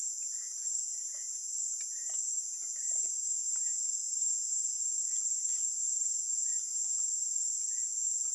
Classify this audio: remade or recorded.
remade